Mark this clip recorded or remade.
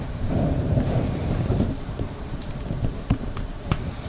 remade